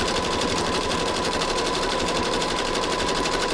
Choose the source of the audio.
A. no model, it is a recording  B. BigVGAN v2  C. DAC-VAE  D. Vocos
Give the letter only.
B